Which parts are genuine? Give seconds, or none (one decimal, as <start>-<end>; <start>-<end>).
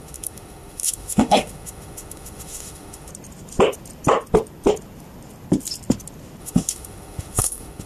3.1-6.4